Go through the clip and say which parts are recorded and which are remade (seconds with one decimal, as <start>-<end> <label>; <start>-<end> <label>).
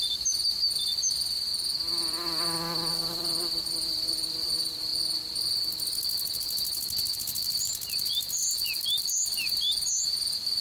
0.0-1.5 remade; 1.5-2.9 recorded; 2.9-4.9 remade; 4.9-7.2 recorded; 7.2-8.4 remade; 8.4-9.0 recorded; 9.0-10.6 remade